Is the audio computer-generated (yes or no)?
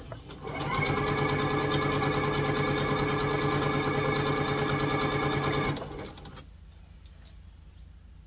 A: no